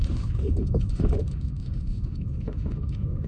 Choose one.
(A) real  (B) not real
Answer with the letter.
B